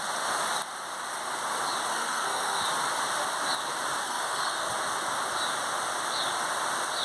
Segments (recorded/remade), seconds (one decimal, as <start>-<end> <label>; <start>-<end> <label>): 0.0-1.9 recorded; 1.9-2.6 remade; 2.6-4.0 recorded; 4.0-4.7 remade; 4.7-7.0 recorded